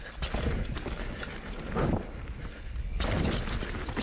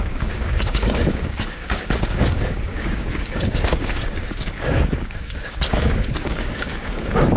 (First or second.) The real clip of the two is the first